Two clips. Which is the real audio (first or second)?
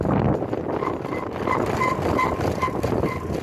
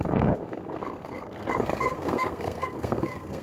first